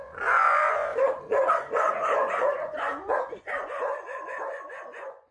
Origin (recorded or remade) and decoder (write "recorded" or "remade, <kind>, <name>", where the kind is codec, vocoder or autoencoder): remade, vocoder, Vocos